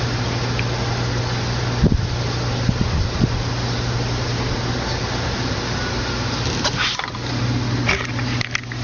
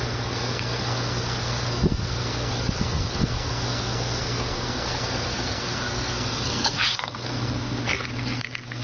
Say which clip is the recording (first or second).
first